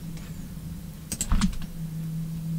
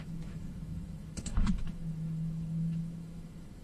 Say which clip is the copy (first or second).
second